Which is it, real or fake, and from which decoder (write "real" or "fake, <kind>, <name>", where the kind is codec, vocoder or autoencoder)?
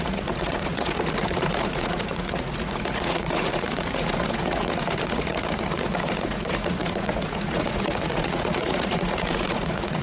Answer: fake, vocoder, Vocos